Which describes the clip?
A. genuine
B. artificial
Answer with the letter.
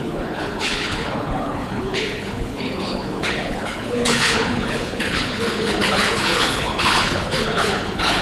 B